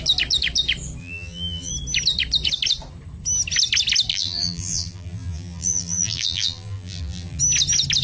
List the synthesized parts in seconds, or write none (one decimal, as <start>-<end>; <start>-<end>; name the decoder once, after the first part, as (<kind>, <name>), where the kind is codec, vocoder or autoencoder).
1.0-1.7 (vocoder, BigVGAN v2); 4.1-7.4